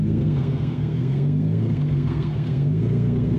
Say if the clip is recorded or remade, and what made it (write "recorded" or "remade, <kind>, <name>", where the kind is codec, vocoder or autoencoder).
remade, codec, SNAC